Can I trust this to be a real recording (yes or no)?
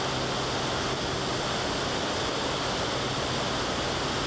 yes